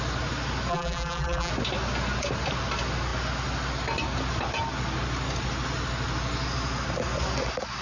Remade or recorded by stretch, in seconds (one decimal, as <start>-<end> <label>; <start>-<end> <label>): 0.0-0.7 recorded; 0.7-1.5 remade; 1.5-7.8 recorded